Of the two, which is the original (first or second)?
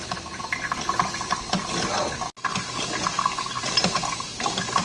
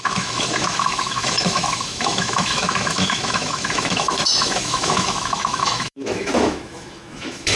first